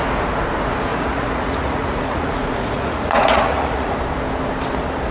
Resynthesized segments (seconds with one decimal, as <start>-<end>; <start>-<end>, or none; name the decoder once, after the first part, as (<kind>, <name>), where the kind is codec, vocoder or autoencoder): 0.9-4.0 (vocoder, Vocos)